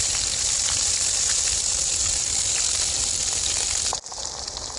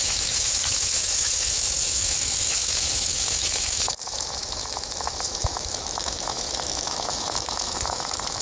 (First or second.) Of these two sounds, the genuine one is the first